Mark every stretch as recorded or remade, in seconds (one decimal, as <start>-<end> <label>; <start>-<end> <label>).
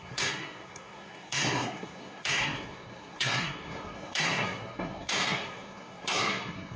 0.0-6.8 remade